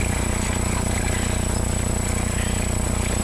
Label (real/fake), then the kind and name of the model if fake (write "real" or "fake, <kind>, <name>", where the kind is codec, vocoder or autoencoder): real